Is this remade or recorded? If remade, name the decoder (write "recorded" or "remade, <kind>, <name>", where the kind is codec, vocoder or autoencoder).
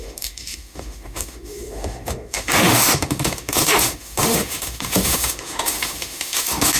remade, autoencoder, DAC-VAE